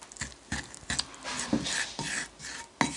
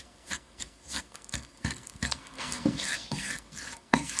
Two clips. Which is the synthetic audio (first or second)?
second